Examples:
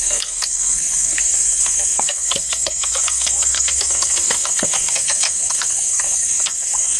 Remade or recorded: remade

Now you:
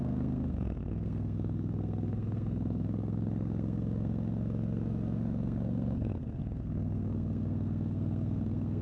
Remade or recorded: remade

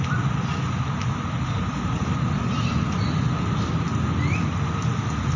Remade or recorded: recorded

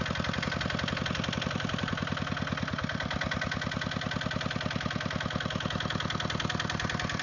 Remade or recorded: recorded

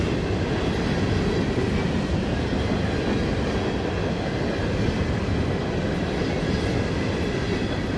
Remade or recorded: recorded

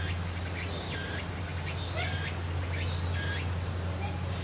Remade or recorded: recorded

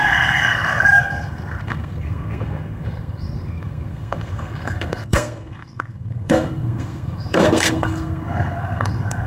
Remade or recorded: remade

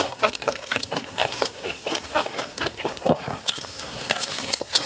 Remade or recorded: remade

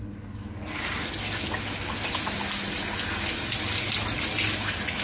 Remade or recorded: recorded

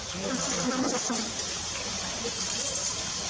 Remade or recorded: recorded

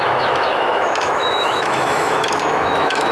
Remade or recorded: remade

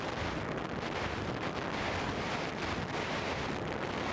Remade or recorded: recorded